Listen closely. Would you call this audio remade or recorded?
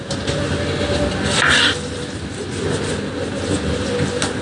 recorded